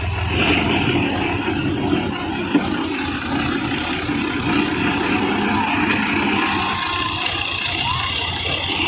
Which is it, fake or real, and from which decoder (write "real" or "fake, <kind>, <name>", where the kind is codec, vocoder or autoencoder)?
real